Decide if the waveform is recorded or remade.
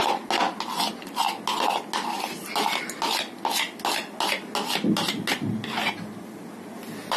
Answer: recorded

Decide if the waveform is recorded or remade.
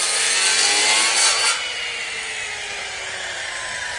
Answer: recorded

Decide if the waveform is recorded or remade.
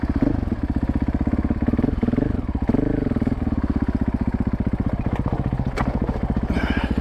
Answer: recorded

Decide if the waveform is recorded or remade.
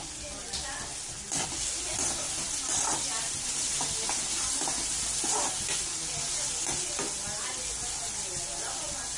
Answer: recorded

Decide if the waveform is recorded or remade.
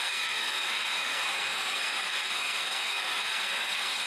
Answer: remade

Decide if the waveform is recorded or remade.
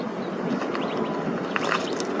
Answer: recorded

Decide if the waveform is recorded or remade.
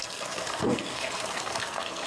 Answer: remade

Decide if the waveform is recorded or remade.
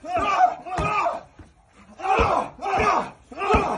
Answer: recorded